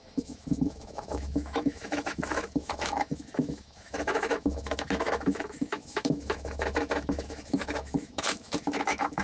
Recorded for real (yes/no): no